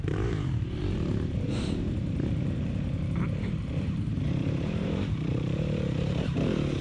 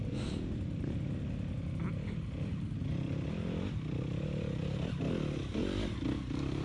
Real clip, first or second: second